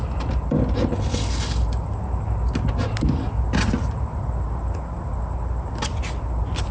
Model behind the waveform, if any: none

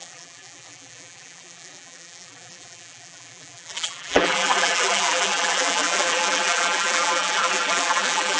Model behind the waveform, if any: vocoder, BigVGAN v2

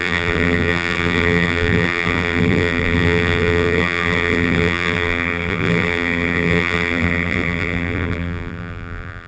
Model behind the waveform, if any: vocoder, BigVGAN v2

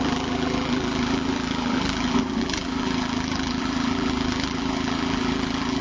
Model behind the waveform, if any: vocoder, BigVGAN v2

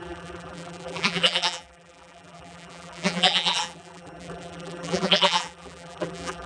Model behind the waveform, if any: vocoder, BigVGAN v2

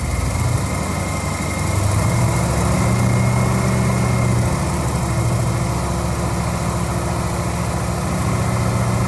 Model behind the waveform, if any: none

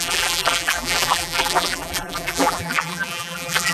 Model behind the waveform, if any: vocoder, BigVGAN v2